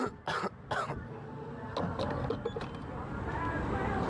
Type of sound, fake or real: real